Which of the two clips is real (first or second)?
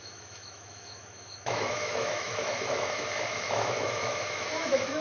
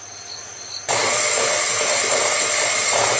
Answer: second